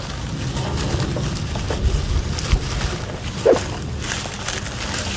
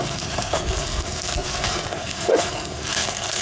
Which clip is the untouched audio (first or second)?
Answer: first